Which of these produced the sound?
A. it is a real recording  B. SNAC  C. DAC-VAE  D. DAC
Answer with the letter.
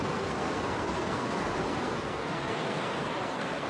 B